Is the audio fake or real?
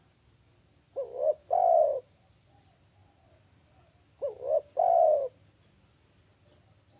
real